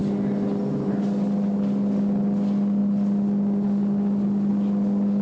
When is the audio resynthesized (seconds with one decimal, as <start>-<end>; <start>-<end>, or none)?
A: none